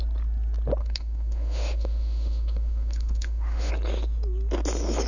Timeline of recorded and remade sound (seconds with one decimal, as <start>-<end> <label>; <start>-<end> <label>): 0.0-0.8 recorded; 0.8-3.7 remade; 3.7-5.1 recorded